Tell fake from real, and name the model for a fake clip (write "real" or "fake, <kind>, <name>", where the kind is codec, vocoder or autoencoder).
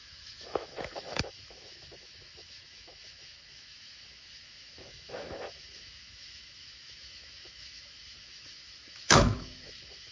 fake, autoencoder, DAC-VAE